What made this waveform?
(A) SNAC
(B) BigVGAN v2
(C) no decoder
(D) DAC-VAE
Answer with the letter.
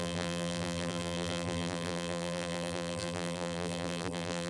B